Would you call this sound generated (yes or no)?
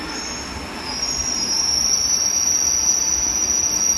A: no